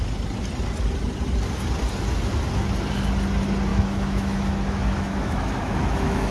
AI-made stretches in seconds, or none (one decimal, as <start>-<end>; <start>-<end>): 3.7-6.3